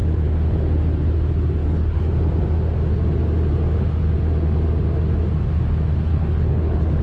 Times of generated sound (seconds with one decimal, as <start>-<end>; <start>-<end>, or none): 1.6-2.1; 6.1-7.0